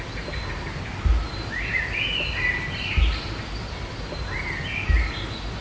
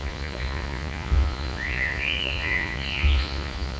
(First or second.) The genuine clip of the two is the first